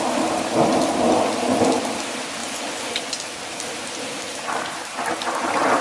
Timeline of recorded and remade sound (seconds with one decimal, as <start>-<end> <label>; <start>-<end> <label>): 0.0-2.4 recorded; 2.4-3.2 remade; 3.2-5.8 recorded